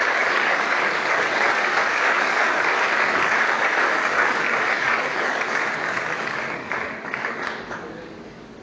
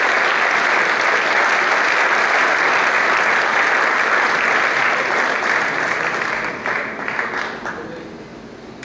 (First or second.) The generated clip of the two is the first